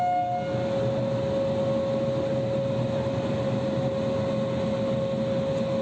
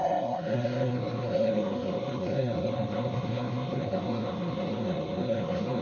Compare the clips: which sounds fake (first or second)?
second